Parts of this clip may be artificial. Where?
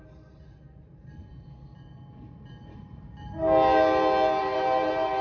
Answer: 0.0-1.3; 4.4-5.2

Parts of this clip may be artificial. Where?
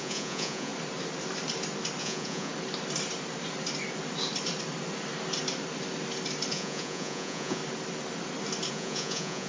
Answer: 0.0-0.7; 2.0-2.5; 6.5-7.6; 8.7-9.5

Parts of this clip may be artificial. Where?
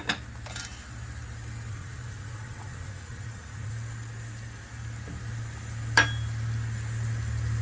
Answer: 1.7-3.7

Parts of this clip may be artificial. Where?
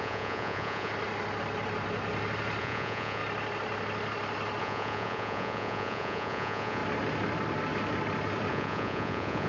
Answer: 0.0-0.9; 2.6-3.2; 4.6-6.8; 8.5-9.5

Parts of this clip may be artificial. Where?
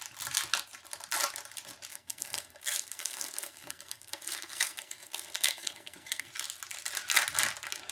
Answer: 1.9-6.3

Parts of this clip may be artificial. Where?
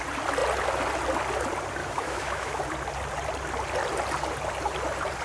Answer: 1.8-2.6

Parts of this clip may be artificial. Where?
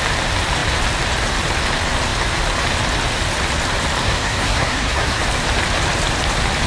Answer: 4.0-5.2